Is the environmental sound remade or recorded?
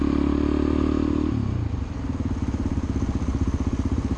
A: recorded